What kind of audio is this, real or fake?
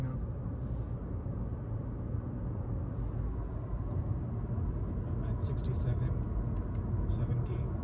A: real